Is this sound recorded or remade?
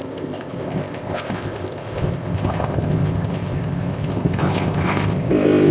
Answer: remade